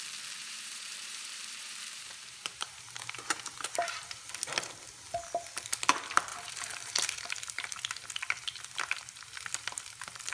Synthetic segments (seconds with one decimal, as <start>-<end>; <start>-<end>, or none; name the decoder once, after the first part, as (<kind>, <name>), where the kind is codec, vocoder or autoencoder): 0.4-4.3 (vocoder, BigVGAN v2); 6.3-7.2